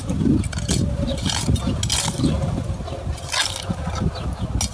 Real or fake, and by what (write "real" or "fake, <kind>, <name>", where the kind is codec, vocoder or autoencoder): real